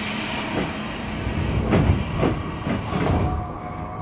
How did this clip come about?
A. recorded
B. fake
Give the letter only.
A